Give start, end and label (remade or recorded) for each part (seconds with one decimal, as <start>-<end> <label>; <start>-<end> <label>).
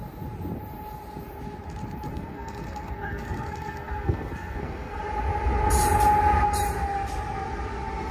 0.0-2.1 recorded; 2.1-5.0 remade; 5.0-8.1 recorded